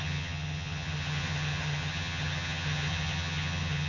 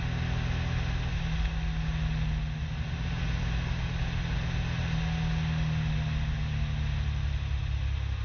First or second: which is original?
second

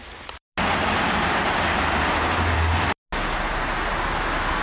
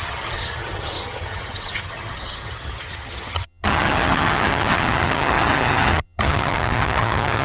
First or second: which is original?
first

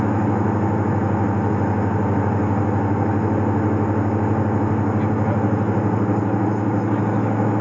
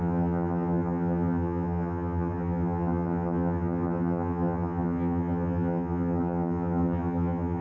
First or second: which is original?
first